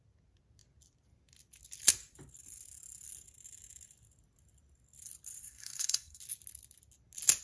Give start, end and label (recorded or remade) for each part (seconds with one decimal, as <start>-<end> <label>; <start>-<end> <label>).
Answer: 0.0-5.4 recorded; 5.4-6.2 remade; 6.2-7.4 recorded